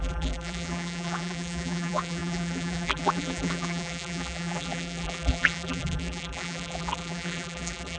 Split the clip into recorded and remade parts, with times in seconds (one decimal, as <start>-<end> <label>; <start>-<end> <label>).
0.0-8.0 remade

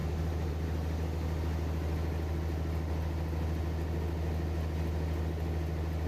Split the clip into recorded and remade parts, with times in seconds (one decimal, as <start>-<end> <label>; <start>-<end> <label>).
0.0-0.5 remade; 0.5-6.1 recorded

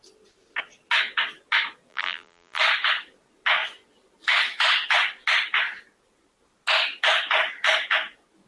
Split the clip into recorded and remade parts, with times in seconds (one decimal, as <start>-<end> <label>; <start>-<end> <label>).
0.0-1.9 recorded; 1.9-2.6 remade; 2.6-8.5 recorded